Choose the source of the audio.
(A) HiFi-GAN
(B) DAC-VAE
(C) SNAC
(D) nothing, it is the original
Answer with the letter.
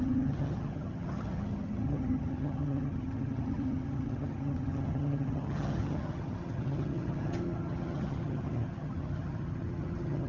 A